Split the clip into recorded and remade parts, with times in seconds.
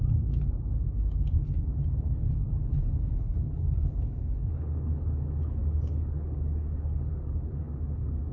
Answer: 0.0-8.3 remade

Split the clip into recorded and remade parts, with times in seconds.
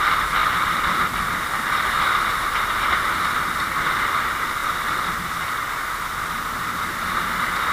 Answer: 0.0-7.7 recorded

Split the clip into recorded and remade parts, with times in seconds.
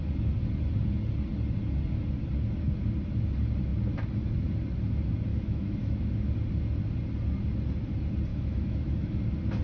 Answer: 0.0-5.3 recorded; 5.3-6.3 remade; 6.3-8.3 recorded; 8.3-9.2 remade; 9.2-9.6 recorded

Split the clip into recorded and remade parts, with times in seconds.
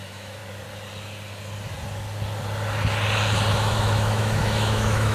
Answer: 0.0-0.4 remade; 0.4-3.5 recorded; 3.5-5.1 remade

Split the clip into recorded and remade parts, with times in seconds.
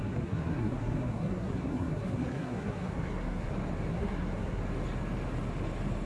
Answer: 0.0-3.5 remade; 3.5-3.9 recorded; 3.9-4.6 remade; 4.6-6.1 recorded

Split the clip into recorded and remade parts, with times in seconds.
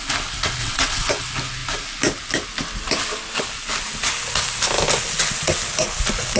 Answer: 0.0-0.6 recorded; 0.6-1.1 remade; 1.1-6.4 recorded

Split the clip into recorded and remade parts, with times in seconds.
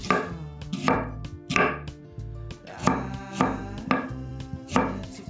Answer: 0.0-5.3 recorded